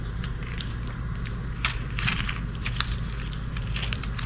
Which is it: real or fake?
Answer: fake